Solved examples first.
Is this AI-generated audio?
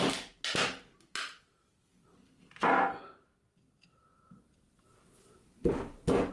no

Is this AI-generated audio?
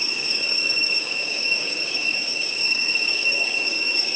yes